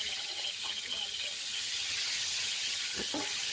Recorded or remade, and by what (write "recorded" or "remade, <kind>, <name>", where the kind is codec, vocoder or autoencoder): remade, vocoder, HiFi-GAN